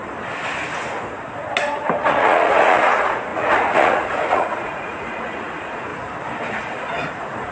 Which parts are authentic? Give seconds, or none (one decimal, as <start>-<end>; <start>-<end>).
0.0-2.0; 5.9-6.5